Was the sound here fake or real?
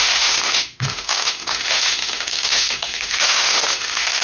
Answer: fake